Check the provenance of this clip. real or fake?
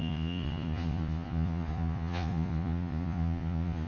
fake